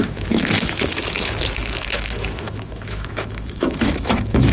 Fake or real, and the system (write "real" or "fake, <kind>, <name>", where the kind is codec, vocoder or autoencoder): fake, autoencoder, DAC-VAE